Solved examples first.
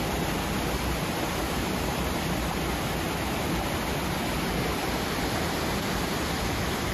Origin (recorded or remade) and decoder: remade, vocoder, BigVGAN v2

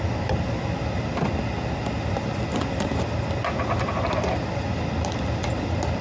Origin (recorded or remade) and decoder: recorded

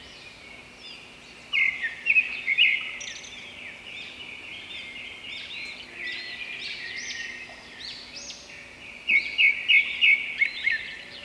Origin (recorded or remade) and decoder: recorded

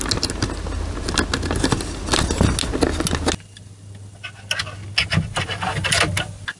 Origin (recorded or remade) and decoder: recorded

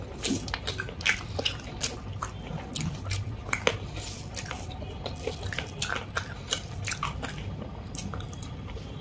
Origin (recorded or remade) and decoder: recorded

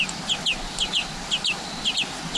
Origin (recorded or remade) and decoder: recorded